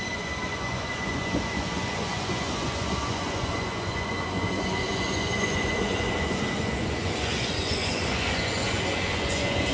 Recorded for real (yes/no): no